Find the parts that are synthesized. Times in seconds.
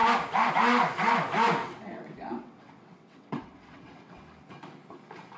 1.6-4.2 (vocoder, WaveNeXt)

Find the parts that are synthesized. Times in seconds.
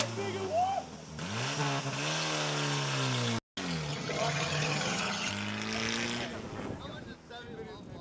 3.9-5.3 (vocoder, HiFi-GAN)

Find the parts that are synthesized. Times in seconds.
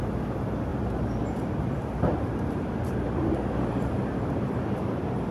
0.7-3.9 (vocoder, BigVGAN v2)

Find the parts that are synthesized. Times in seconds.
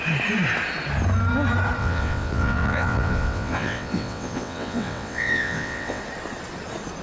1.8-6.0 (vocoder, WaveNeXt)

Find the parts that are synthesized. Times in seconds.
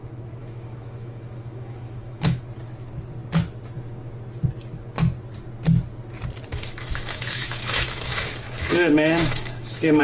0.4-2.4 (autoencoder, DAC-VAE); 6.5-10.0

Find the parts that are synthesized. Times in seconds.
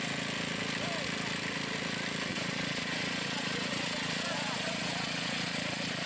2.3-6.1 (vocoder, Vocos)